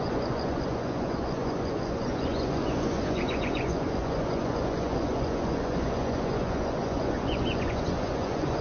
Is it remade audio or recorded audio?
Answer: remade